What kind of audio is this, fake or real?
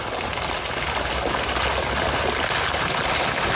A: real